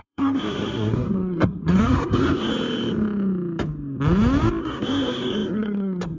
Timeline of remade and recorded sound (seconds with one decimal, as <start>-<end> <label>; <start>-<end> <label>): 0.0-2.5 remade; 2.5-4.6 recorded; 4.6-6.2 remade